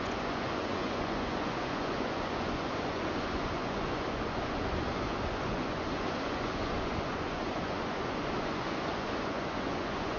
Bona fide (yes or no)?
no